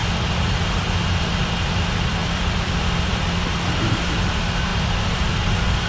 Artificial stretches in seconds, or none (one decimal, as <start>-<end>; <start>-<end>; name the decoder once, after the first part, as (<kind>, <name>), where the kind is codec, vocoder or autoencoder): 4.7-5.2 (vocoder, BigVGAN v2)